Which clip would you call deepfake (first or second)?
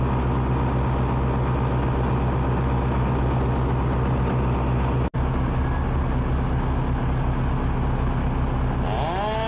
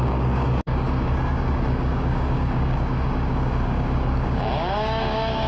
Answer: second